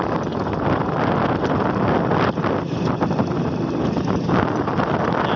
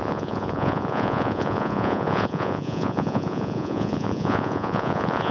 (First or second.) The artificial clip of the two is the second